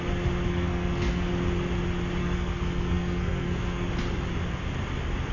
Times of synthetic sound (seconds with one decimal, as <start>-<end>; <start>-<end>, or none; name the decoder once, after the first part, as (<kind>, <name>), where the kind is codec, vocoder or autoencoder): 0.5-1.3 (codec, SNAC); 2.2-3.9